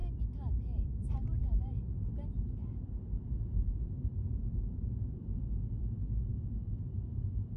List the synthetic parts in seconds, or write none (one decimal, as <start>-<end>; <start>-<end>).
0.5-1.4; 4.2-7.6